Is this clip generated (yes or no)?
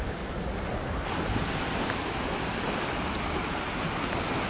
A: no